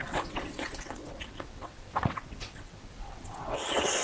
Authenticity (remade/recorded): remade